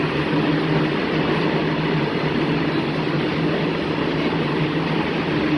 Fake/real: real